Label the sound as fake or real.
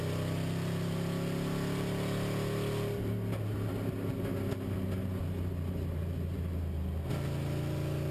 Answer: real